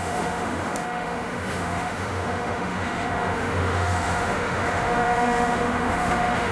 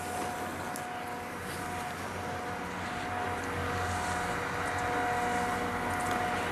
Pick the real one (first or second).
second